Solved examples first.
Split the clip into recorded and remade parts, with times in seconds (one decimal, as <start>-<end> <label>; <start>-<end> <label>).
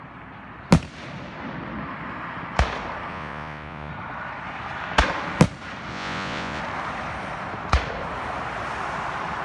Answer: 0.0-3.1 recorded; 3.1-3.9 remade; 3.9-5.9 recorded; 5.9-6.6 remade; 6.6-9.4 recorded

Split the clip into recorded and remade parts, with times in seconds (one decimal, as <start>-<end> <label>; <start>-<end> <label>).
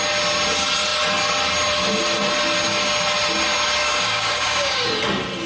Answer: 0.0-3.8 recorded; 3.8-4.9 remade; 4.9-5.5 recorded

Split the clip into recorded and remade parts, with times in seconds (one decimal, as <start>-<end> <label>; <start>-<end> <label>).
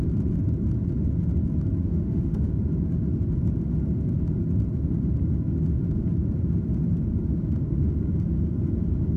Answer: 0.0-1.8 recorded; 1.8-2.5 remade; 2.5-9.2 recorded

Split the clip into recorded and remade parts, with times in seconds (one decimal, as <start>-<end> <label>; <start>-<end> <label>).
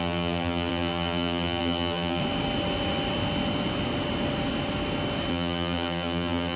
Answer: 0.0-2.2 remade; 2.2-5.3 recorded; 5.3-6.6 remade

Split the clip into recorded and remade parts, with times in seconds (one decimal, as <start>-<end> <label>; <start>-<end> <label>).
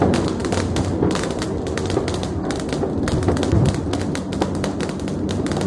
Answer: 0.0-5.7 recorded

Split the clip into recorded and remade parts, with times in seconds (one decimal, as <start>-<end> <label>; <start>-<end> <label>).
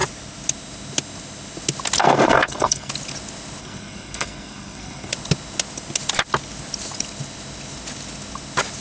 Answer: 0.0-2.0 recorded; 2.0-2.9 remade; 2.9-3.6 recorded; 3.6-5.1 remade; 5.1-8.8 recorded